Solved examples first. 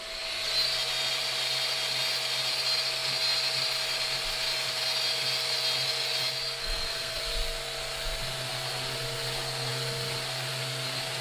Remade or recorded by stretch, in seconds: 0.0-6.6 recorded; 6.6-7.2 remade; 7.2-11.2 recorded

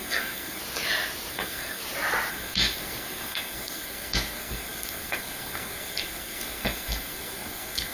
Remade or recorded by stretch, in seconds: 0.0-0.6 remade; 0.6-1.3 recorded; 1.3-1.8 remade; 1.8-2.3 recorded; 2.3-7.9 remade

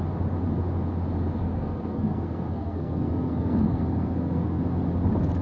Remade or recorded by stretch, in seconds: 0.0-1.4 recorded; 1.4-4.6 remade; 4.6-5.4 recorded

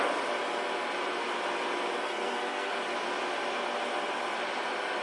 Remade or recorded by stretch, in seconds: 0.0-2.0 recorded; 2.0-2.7 remade; 2.7-5.0 recorded

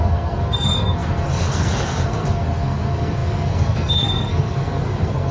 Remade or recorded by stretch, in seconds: 0.0-5.3 remade

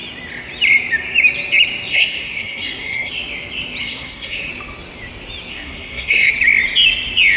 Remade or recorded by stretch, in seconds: 0.0-1.9 recorded; 1.9-3.1 remade; 3.1-3.8 recorded; 3.8-4.5 remade; 4.5-5.5 recorded; 5.5-6.3 remade; 6.3-7.4 recorded

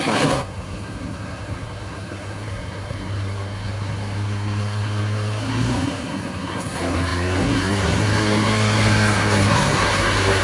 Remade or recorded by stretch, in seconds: 0.0-10.4 remade